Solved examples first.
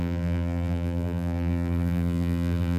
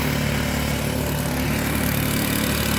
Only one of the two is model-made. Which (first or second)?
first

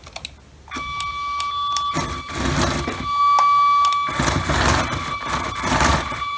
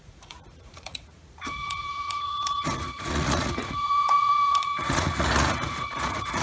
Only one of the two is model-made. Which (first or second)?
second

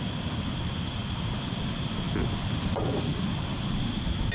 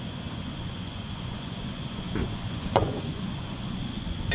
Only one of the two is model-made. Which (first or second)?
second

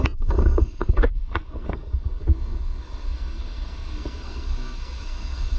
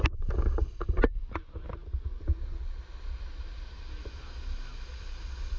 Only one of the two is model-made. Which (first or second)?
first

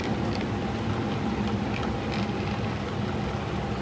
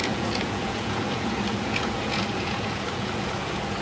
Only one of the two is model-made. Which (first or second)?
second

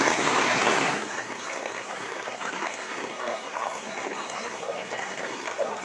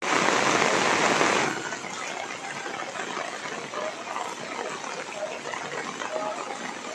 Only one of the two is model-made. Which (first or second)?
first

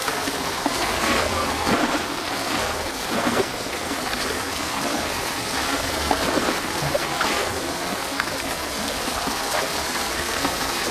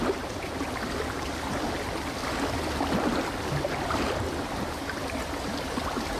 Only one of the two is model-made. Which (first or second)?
first